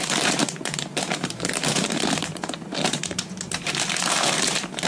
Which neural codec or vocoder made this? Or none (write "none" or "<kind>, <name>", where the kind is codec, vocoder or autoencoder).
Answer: vocoder, BigVGAN v2